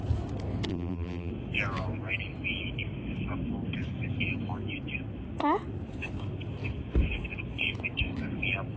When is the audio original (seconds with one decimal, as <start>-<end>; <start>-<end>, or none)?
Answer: 0.0-0.7; 1.3-8.8